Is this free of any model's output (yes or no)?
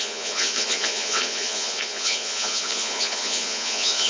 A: no